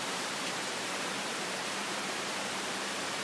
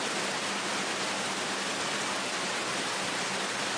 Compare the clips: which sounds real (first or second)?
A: second